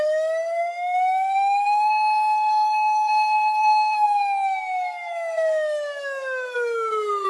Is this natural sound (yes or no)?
no